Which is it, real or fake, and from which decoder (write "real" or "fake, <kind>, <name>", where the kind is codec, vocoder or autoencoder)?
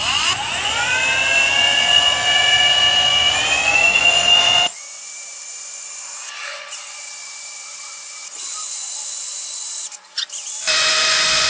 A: fake, vocoder, Vocos